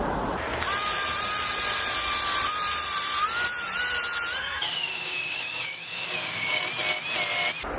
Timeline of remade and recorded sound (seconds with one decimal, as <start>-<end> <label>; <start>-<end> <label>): 0.0-4.4 recorded; 4.4-6.6 remade; 6.6-7.8 recorded